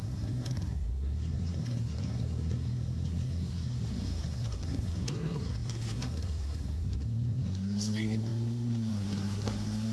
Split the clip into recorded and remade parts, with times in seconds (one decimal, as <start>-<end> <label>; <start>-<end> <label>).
0.0-9.9 remade